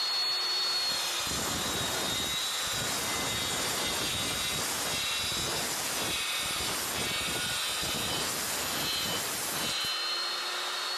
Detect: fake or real real